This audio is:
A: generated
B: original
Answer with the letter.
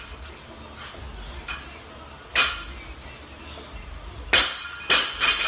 B